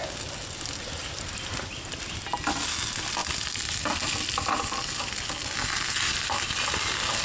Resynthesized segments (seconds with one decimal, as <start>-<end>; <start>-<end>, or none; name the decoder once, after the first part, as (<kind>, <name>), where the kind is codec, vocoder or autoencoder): 1.0-2.1 (vocoder, BigVGAN v2)